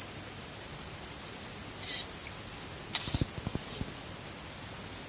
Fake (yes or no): no